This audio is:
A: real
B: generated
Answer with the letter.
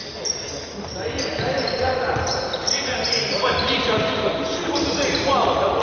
A